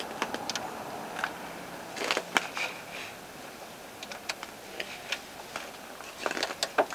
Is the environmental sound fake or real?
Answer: real